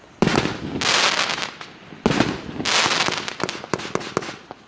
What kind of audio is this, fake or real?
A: real